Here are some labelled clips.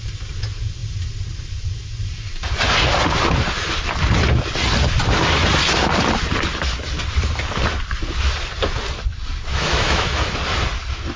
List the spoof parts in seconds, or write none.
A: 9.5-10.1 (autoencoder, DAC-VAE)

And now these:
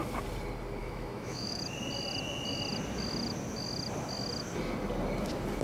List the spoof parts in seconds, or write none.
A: 0.8-1.6 (autoencoder, DAC-VAE)

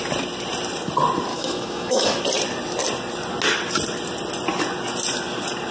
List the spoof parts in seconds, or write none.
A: 1.3-2.2 (autoencoder, DAC-VAE)

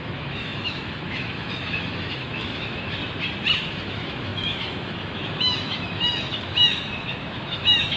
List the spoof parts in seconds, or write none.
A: 0.0-3.0 (autoencoder, DAC-VAE); 3.6-8.0

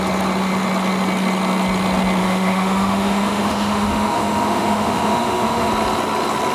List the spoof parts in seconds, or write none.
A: 2.2-5.7 (autoencoder, DAC-VAE)

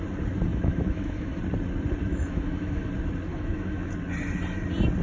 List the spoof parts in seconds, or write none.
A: 0.5-1.4 (autoencoder, DAC-VAE); 2.1-2.9; 3.3-3.9

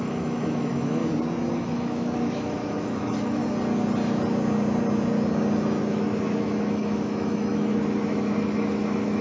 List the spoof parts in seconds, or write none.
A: 0.0-1.0 (autoencoder, DAC-VAE); 1.5-3.4; 5.8-9.2